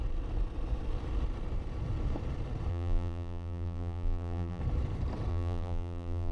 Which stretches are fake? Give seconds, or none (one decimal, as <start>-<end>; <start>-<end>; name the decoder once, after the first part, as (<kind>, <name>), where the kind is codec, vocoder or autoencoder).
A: 2.7-4.6 (vocoder, BigVGAN v2); 5.3-6.3